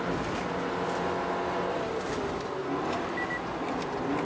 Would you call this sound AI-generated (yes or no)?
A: no